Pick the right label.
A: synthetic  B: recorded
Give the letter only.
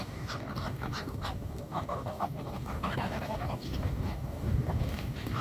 A